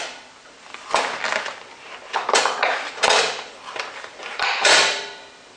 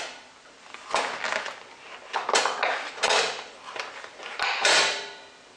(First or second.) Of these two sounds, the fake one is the first